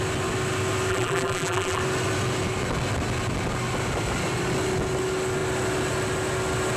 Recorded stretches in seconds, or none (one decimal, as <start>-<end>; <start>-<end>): 0.0-0.9; 1.8-6.8